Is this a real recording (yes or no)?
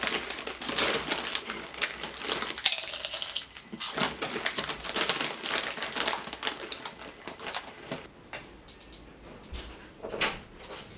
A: yes